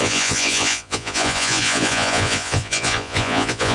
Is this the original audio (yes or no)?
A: no